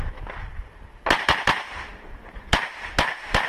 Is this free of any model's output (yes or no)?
no